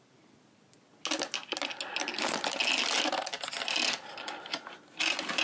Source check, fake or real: real